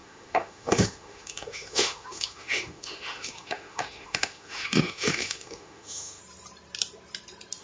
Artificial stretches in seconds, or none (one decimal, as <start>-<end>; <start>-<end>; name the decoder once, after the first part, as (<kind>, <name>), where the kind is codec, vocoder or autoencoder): 0.0-6.2 (autoencoder, DAC-VAE)